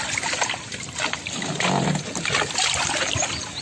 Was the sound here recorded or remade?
recorded